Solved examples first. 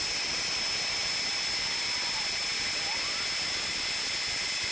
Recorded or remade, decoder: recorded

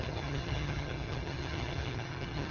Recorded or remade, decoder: remade, vocoder, HiFi-GAN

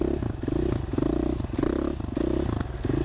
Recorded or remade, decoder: recorded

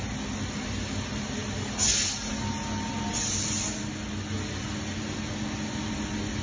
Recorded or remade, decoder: recorded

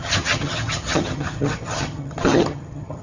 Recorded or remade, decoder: remade, vocoder, HiFi-GAN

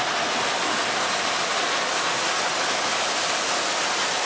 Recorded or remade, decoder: recorded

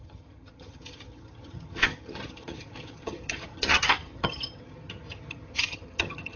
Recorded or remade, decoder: remade, vocoder, HiFi-GAN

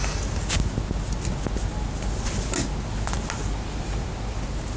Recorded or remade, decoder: recorded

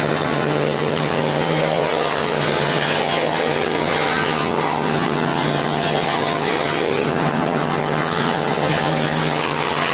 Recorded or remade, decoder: remade, vocoder, HiFi-GAN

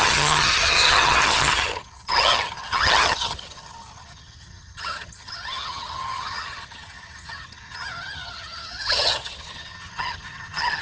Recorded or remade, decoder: remade, vocoder, HiFi-GAN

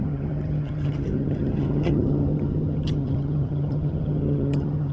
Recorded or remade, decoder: remade, vocoder, HiFi-GAN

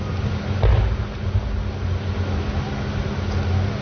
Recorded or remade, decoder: recorded